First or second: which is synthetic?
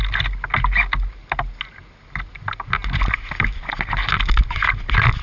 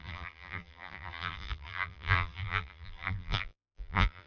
second